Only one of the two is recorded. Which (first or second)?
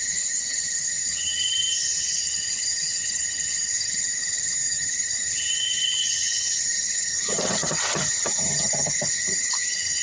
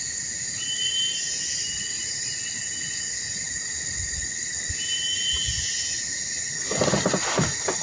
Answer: second